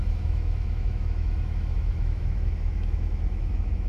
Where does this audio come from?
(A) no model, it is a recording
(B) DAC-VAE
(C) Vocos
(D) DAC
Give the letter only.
B